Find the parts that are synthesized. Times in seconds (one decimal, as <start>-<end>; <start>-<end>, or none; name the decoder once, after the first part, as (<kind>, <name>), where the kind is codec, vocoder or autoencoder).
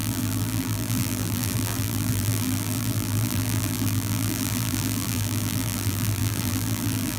0.0-7.2 (vocoder, BigVGAN v2)